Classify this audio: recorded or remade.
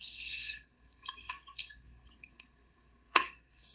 remade